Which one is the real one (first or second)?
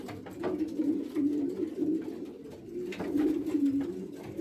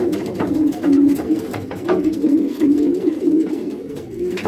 first